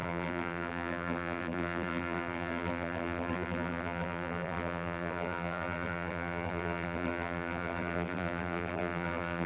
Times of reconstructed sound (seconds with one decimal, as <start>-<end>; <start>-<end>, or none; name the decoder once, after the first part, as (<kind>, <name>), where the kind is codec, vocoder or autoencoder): 0.0-9.5 (vocoder, BigVGAN v2)